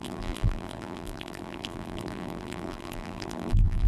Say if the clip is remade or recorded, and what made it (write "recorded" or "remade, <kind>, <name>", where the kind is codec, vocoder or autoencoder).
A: remade, vocoder, BigVGAN v2